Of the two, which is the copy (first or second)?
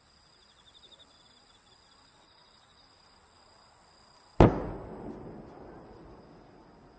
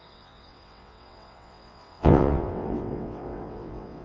second